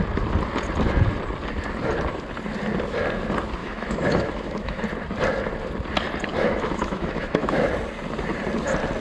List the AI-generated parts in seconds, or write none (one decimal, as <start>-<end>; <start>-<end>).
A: 3.6-4.8; 6.3-7.7